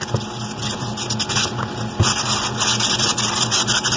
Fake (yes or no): no